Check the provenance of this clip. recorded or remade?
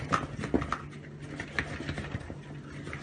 recorded